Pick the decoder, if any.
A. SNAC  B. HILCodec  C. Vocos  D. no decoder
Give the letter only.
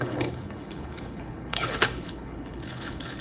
B